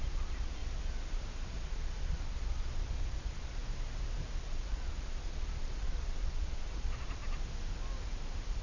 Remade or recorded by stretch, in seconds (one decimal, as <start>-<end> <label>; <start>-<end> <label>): 0.0-0.6 remade; 0.6-1.5 recorded; 1.5-3.6 remade; 3.6-4.4 recorded; 4.4-7.2 remade; 7.2-8.6 recorded